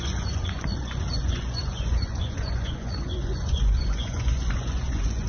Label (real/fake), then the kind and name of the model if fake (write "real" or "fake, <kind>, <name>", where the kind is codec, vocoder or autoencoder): fake, vocoder, Vocos